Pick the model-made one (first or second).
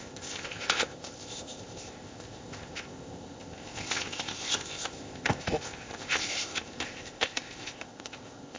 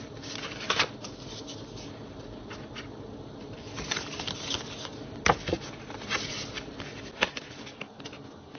first